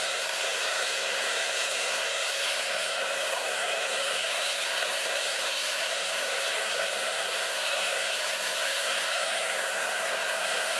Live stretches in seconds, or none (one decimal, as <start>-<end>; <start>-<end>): none